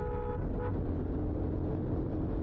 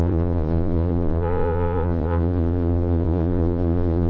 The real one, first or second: first